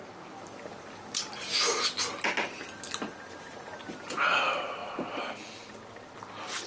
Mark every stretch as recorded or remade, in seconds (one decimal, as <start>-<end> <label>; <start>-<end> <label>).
0.0-6.7 recorded